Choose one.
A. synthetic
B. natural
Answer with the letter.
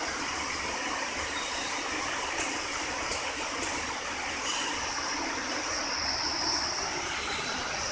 B